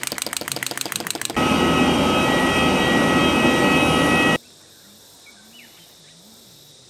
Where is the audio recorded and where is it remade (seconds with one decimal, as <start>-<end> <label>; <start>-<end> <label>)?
0.0-6.9 recorded